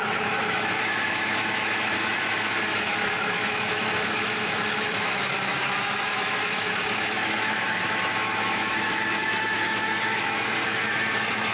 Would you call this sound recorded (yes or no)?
no